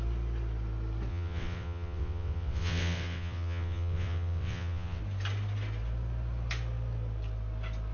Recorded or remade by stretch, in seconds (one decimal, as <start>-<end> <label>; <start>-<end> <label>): 0.0-1.1 recorded; 1.1-5.0 remade; 5.0-7.9 recorded